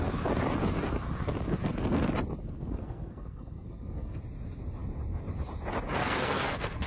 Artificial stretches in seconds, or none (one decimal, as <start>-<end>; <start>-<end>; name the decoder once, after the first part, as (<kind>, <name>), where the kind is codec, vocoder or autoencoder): 2.8-4.2 (codec, SNAC); 6.0-6.9